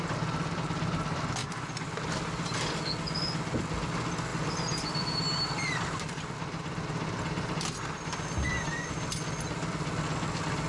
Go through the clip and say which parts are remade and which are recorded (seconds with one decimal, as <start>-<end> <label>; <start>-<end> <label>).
0.0-1.4 recorded; 1.4-2.0 remade; 2.0-4.3 recorded; 4.3-7.5 remade; 7.5-10.7 recorded